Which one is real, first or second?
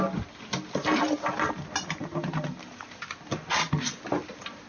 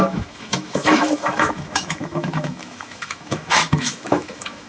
first